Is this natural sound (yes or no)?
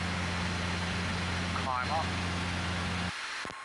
yes